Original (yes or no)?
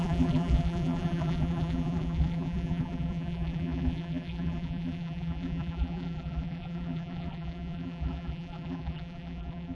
no